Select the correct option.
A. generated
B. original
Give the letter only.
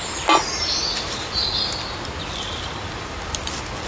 B